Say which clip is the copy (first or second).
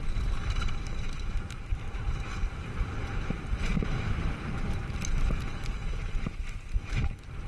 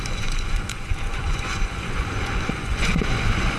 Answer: second